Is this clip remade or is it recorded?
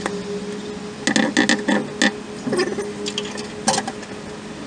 recorded